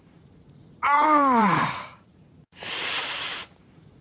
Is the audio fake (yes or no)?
yes